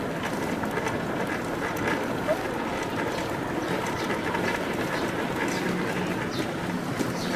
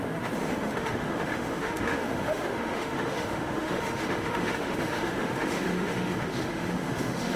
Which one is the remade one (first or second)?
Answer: second